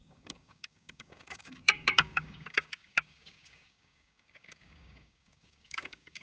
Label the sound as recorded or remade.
remade